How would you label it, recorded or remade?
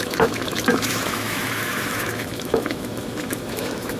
remade